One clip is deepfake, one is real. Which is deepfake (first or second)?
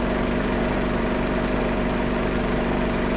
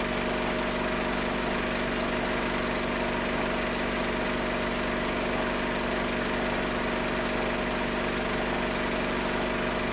first